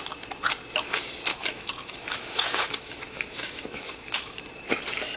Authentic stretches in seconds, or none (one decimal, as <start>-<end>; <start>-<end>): 0.0-1.3; 4.4-5.2